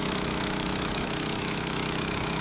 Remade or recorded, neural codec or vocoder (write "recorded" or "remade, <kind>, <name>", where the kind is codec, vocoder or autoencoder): remade, autoencoder, DAC-VAE